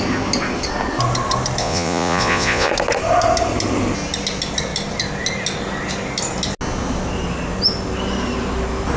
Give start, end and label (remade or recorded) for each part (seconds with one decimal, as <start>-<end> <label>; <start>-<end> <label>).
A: 0.0-1.6 recorded; 1.6-2.7 remade; 2.7-9.0 recorded